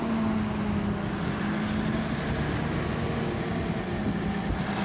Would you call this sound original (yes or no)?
yes